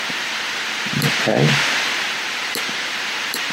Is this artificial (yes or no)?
yes